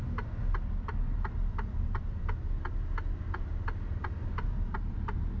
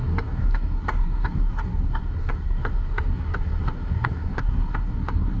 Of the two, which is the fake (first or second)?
second